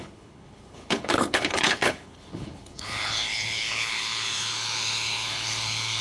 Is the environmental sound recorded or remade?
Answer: remade